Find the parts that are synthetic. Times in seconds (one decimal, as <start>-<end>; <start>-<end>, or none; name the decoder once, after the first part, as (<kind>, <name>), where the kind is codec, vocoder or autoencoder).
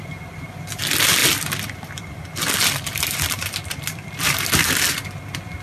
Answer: 1.2-4.5 (vocoder, BigVGAN v2)